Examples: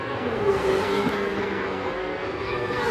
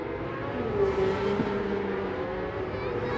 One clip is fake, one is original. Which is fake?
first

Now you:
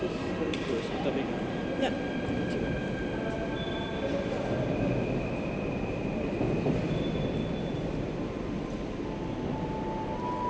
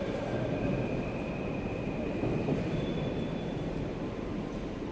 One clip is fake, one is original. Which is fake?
second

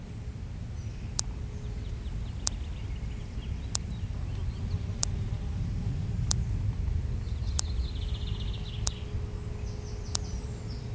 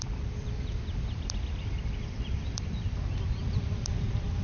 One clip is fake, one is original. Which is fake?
second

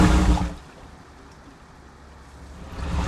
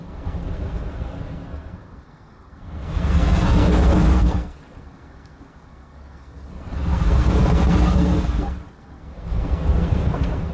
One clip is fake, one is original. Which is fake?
second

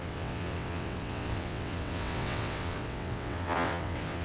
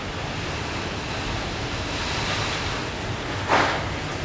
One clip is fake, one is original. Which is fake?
first